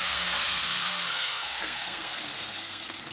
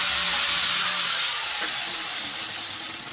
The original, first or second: second